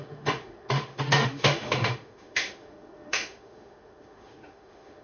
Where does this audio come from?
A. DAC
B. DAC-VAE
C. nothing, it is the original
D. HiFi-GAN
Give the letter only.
B